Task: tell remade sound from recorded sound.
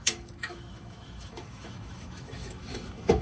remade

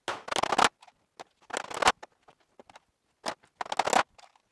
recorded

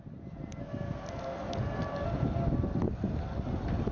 recorded